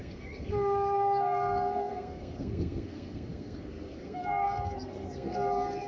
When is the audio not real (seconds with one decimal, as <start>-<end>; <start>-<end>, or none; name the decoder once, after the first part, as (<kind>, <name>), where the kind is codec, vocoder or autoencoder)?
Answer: 0.0-5.9 (codec, SNAC)